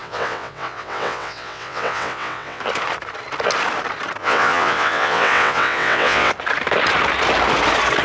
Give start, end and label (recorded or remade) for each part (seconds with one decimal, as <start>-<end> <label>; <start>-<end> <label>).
0.0-2.6 remade; 2.6-4.2 recorded; 4.2-6.3 remade; 6.3-8.0 recorded